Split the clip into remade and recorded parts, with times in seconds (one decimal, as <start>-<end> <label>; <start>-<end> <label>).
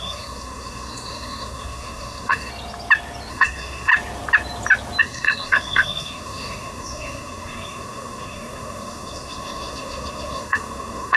0.0-2.5 remade; 2.5-3.3 recorded; 3.3-3.9 remade; 3.9-5.0 recorded; 5.0-11.2 remade